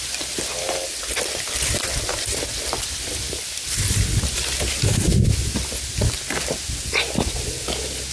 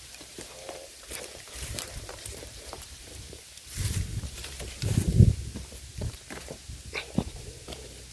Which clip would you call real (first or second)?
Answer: first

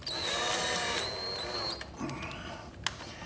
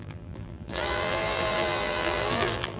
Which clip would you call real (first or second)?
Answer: first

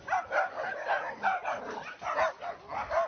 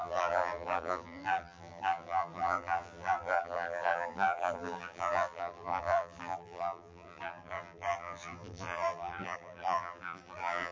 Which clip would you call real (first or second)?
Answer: first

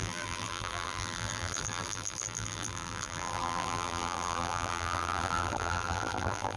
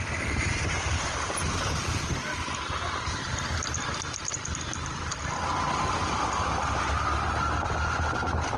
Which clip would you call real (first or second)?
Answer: second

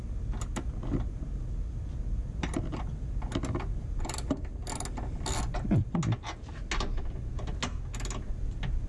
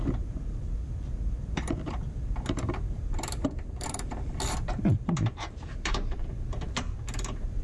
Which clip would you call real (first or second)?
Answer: first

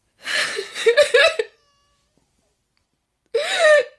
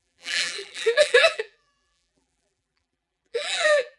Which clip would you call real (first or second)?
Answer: first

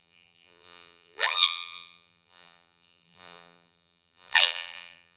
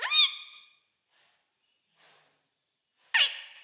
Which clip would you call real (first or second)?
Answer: second